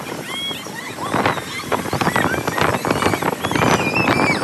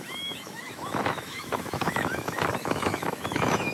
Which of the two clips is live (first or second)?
first